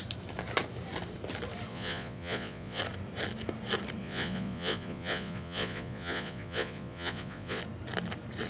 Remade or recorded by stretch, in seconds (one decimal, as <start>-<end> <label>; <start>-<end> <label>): 0.0-1.7 recorded; 1.7-2.8 remade; 2.8-4.0 recorded; 4.0-7.6 remade; 7.6-8.5 recorded